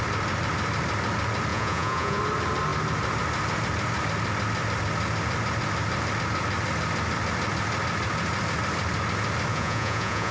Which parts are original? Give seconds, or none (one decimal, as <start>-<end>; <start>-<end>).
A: 0.0-1.5; 2.2-9.5

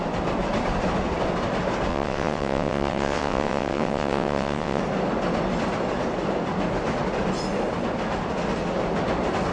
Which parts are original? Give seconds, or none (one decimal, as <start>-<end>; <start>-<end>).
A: 0.0-1.9; 4.8-9.5

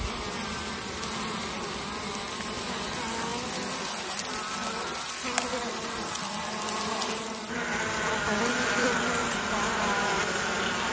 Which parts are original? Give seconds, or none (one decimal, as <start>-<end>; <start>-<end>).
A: 0.0-9.2; 9.9-10.9